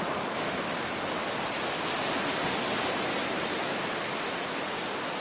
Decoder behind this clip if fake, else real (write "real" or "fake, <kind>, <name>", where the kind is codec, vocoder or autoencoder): real